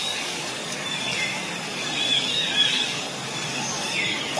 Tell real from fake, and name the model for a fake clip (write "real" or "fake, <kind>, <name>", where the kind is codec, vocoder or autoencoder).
fake, codec, DAC